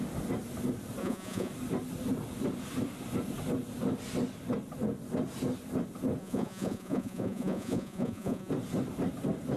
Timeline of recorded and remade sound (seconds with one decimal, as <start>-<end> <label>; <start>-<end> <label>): 0.0-1.0 recorded; 1.0-1.5 remade; 1.5-6.2 recorded; 6.2-8.5 remade; 8.5-9.6 recorded